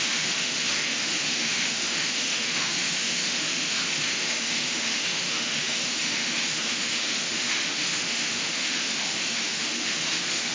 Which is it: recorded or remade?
remade